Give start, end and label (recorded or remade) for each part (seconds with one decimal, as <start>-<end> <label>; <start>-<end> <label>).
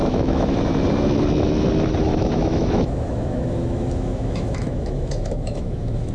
0.0-0.6 remade; 0.6-2.1 recorded; 2.1-6.1 remade